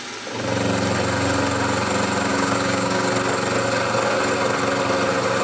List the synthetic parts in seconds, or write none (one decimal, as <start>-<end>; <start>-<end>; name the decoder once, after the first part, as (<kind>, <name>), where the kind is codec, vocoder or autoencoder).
2.3-3.1 (codec, DAC)